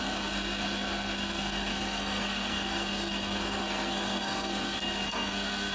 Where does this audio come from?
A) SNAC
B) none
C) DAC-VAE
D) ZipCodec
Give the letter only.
A